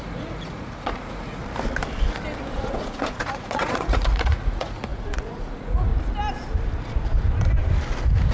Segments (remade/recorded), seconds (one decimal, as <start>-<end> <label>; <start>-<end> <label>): 0.0-1.4 remade; 1.4-2.5 recorded; 2.5-5.9 remade; 5.9-8.3 recorded